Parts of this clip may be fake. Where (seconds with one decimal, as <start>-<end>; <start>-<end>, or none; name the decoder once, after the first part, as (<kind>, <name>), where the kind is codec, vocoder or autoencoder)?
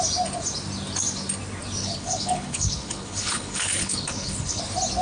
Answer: 1.8-4.6 (codec, HILCodec)